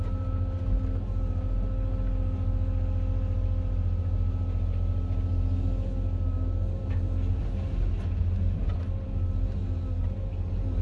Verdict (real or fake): real